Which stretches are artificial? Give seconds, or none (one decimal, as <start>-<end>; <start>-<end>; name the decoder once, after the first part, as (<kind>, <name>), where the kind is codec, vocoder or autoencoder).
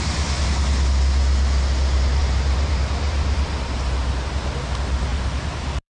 2.2-2.7 (vocoder, BigVGAN v2); 5.1-5.9